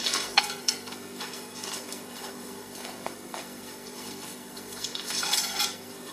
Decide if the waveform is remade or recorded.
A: remade